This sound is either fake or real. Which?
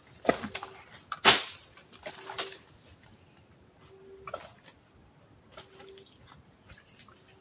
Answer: real